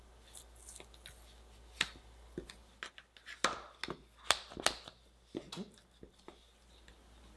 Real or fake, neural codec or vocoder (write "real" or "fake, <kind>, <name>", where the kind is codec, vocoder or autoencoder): real